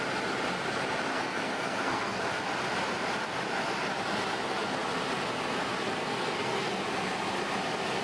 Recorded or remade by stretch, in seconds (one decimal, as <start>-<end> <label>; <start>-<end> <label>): 0.0-1.1 recorded; 1.1-2.2 remade; 2.2-6.0 recorded; 6.0-6.7 remade; 6.7-8.0 recorded